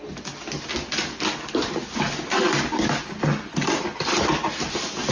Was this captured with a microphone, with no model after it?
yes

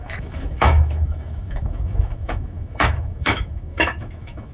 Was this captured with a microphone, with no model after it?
no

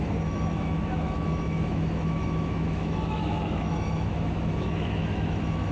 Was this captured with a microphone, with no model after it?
no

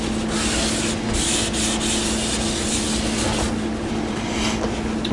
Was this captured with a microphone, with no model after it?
yes